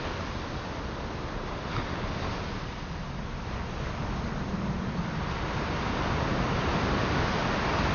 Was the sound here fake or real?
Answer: real